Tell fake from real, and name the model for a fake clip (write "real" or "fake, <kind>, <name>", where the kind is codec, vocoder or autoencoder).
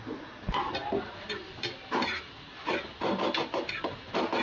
real